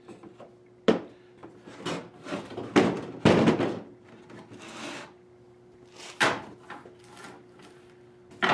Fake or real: real